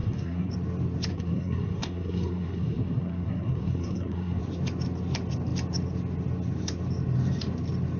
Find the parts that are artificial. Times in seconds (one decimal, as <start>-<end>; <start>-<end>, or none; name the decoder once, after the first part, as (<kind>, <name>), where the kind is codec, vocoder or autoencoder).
0.0-0.5 (codec, SNAC); 1.1-4.4